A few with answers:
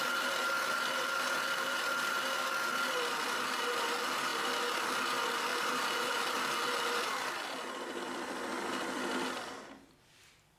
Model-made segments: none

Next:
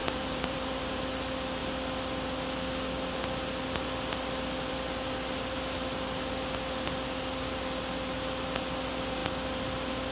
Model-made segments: 0.0-1.0 (vocoder, BigVGAN v2)

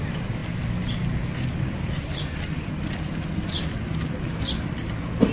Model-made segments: none

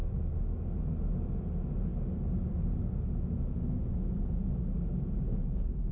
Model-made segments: none

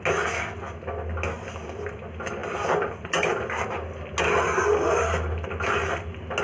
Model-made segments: none

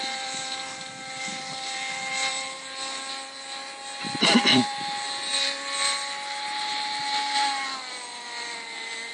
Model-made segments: 0.0-9.1 (vocoder, BigVGAN v2)